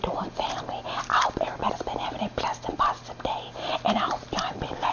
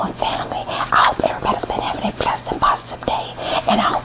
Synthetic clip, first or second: second